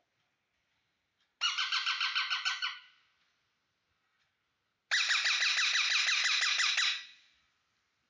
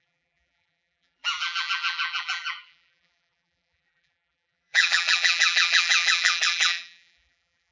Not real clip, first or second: second